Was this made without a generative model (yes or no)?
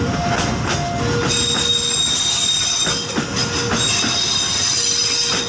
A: yes